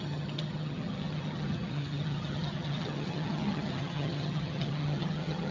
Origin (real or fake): fake